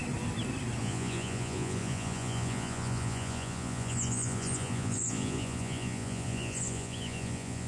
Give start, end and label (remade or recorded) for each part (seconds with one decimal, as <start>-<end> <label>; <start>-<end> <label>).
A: 0.0-0.8 recorded; 0.8-7.7 remade